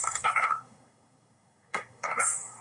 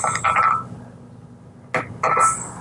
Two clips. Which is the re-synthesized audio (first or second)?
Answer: first